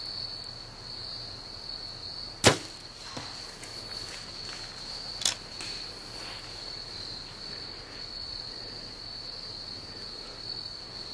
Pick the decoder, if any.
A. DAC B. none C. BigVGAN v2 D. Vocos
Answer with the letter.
B